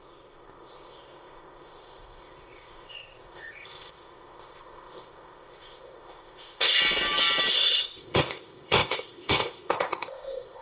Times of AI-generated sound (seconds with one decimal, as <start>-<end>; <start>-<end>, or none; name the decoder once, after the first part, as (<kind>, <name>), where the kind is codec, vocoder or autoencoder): 0.0-6.8 (codec, ZipCodec); 7.5-10.6